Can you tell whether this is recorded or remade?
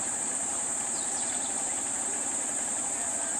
remade